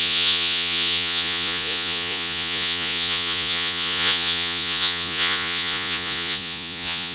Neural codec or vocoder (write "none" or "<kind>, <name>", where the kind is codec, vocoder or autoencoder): vocoder, Vocos